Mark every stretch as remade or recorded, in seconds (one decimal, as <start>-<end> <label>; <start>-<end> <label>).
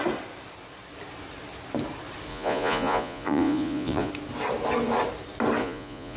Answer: 0.0-2.3 recorded; 2.3-4.1 remade; 4.1-5.6 recorded; 5.6-6.2 remade